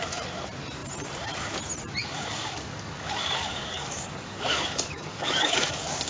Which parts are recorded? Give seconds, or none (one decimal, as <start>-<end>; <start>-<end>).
0.0-2.0